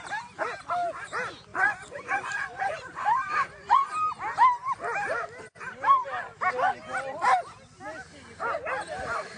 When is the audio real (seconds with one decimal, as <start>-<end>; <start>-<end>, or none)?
0.0-1.5; 3.9-9.4